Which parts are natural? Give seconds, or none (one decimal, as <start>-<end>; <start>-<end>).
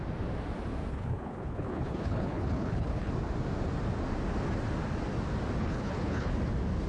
0.0-0.9; 3.1-5.6; 6.3-6.9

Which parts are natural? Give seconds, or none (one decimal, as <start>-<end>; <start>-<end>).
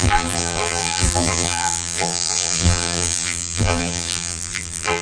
none